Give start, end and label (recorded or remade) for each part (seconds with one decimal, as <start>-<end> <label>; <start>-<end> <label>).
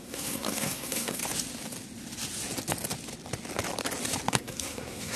0.0-1.2 remade; 1.2-4.3 recorded; 4.3-5.2 remade